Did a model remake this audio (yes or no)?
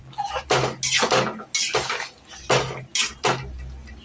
no